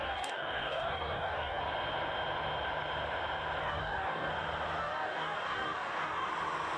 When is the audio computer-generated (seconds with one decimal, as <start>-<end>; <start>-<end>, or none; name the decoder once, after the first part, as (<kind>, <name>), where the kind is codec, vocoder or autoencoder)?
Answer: 0.0-1.6 (codec, DAC); 3.6-4.3; 4.8-6.3